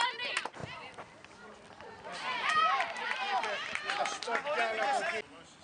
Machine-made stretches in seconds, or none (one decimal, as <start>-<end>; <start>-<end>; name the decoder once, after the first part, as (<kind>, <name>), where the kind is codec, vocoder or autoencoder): 0.6-4.0 (vocoder, BigVGAN v2)